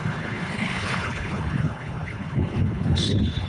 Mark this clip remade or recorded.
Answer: remade